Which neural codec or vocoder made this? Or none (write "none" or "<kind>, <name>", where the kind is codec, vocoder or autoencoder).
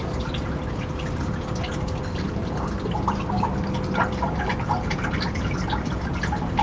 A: none